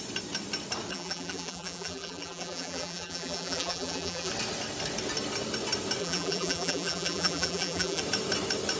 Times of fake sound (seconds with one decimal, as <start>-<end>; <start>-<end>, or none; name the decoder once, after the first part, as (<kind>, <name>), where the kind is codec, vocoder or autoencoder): 0.9-4.3 (vocoder, BigVGAN v2); 6.0-8.0

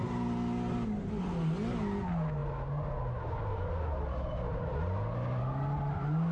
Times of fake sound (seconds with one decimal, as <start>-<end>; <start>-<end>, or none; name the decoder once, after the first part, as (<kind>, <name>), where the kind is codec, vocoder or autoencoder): none

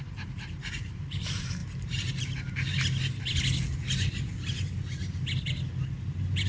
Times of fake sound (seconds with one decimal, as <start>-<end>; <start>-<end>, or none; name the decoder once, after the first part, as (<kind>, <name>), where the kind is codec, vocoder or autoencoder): 0.0-2.7 (vocoder, BigVGAN v2)